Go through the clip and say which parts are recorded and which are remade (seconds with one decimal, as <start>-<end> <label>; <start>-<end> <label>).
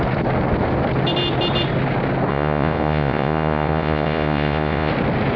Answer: 0.0-2.3 recorded; 2.3-4.9 remade; 4.9-5.4 recorded